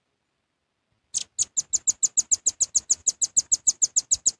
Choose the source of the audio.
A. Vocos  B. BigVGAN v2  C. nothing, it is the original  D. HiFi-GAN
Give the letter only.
C